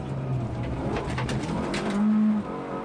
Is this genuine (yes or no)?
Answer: yes